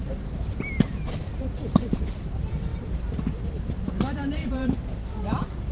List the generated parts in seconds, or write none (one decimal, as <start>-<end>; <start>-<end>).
0.0-5.7

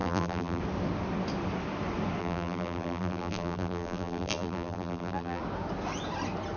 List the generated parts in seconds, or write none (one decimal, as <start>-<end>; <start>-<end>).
0.0-0.6; 2.2-5.4